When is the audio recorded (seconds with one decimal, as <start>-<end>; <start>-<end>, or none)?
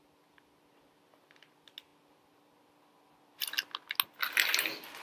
0.0-5.0